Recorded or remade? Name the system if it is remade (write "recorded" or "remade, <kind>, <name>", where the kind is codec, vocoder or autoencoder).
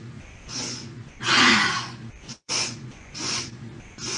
remade, vocoder, Vocos